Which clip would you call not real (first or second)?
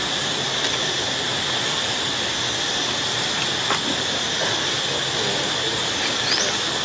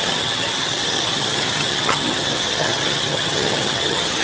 second